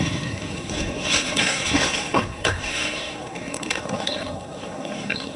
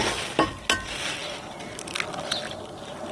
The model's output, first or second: first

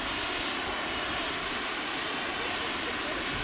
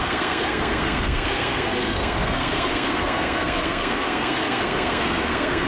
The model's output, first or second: second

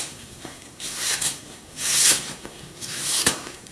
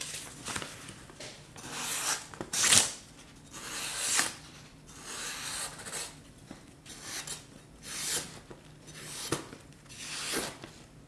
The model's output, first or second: first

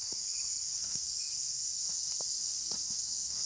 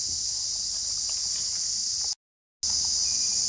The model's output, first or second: first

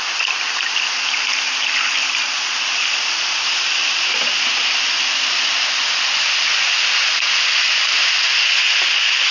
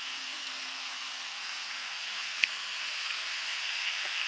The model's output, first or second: second